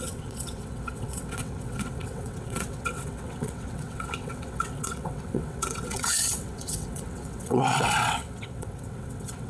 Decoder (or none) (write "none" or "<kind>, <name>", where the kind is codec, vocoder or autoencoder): vocoder, WaveNeXt